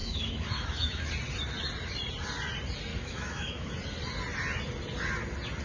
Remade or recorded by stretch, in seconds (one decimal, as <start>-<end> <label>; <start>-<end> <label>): 0.0-1.1 remade; 1.1-2.9 recorded; 2.9-3.7 remade; 3.7-5.6 recorded